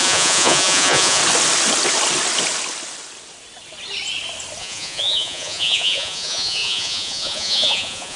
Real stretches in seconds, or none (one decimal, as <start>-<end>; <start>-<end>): 1.2-4.6